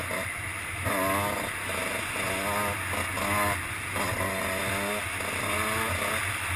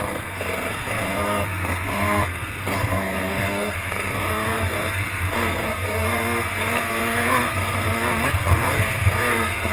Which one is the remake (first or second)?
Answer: second